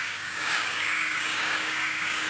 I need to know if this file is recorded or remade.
remade